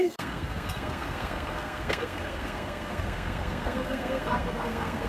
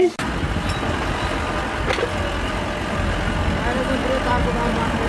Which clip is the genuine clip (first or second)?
second